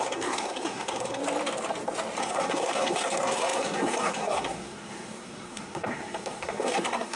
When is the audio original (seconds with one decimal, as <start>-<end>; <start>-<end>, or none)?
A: 1.2-2.2